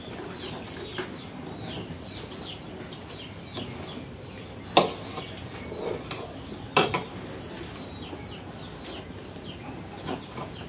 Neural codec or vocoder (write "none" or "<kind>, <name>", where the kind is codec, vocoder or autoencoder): none